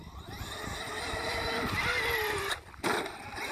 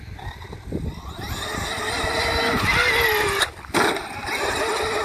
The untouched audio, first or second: second